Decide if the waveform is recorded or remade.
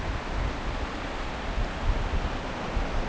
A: recorded